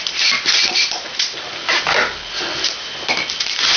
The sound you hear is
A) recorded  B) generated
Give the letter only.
A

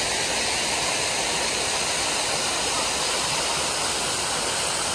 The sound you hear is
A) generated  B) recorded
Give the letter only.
B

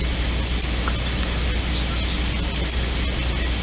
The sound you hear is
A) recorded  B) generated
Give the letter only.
A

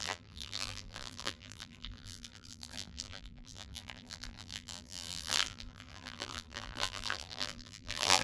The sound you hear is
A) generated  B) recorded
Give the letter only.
A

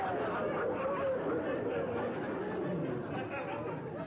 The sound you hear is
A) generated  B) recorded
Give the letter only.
B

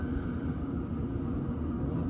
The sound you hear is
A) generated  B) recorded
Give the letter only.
B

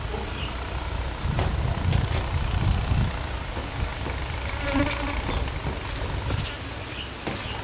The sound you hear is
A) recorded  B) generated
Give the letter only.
A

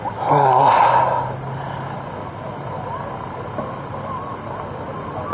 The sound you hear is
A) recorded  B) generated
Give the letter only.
A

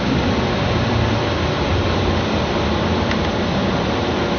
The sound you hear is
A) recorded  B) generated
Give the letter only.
B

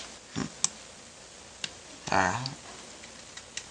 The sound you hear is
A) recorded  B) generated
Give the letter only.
A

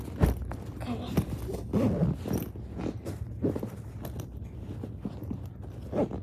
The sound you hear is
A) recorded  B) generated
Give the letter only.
A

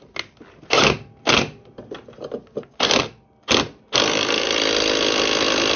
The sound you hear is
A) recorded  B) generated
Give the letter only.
A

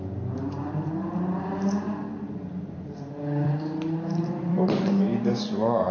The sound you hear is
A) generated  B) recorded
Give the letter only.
A